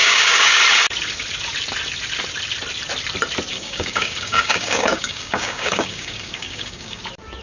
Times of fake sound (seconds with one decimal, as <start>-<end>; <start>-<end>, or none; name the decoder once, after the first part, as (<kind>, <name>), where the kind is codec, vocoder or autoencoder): 0.0-0.6 (codec, DAC); 3.5-7.0